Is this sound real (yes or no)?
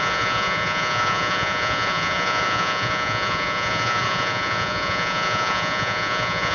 no